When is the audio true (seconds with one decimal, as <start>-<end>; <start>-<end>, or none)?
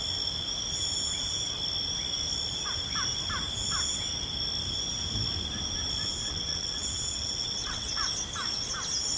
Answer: 0.0-6.2; 7.9-9.2